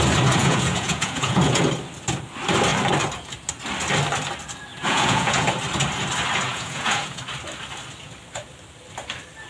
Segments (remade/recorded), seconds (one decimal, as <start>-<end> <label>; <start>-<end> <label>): 0.0-0.4 recorded; 0.4-1.6 remade; 1.6-4.7 recorded; 4.7-5.5 remade; 5.5-6.5 recorded; 6.5-7.2 remade; 7.2-9.5 recorded